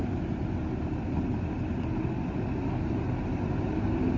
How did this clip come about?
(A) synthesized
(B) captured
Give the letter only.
B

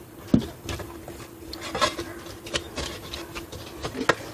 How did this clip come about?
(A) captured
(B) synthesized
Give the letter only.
A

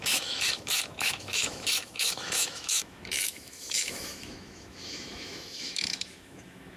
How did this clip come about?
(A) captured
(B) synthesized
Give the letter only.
B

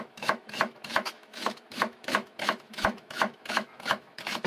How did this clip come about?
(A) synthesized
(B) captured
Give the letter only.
A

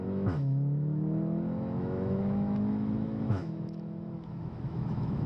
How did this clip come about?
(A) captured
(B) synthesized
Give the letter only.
B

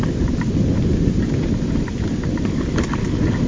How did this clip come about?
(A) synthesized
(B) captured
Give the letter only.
B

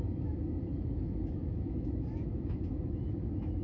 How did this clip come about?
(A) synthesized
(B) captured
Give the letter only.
A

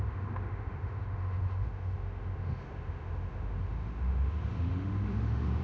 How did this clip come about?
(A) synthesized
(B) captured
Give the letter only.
A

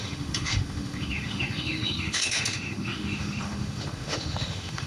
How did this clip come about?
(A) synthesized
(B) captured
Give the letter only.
A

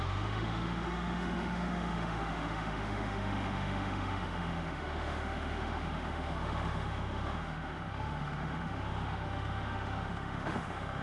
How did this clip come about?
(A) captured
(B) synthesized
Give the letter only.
B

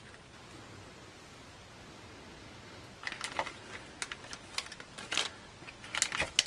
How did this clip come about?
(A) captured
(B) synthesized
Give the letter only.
A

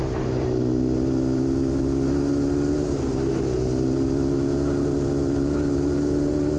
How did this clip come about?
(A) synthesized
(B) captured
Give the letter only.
B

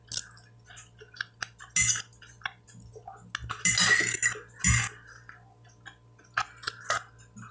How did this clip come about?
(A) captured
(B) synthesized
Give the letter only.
A